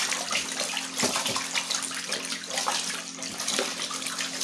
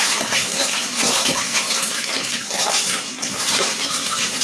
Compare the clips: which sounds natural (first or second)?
first